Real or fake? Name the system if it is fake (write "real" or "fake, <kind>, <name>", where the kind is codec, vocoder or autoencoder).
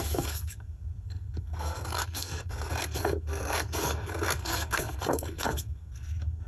fake, codec, SNAC